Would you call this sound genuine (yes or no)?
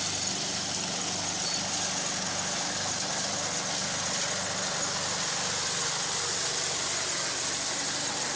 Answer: yes